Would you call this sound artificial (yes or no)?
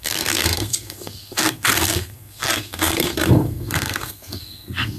yes